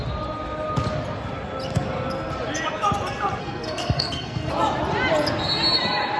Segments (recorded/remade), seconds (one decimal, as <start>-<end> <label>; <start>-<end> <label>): 0.0-3.4 recorded; 3.4-4.5 remade; 4.5-6.2 recorded